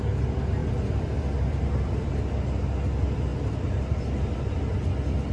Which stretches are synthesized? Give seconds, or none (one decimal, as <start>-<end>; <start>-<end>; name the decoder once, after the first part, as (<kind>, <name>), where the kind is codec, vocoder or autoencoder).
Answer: 0.6-2.1 (vocoder, BigVGAN v2)